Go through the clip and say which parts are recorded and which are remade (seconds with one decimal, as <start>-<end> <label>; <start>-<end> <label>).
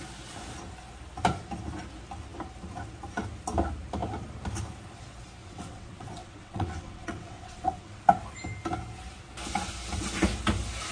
0.0-5.4 recorded; 5.4-8.0 remade; 8.0-10.9 recorded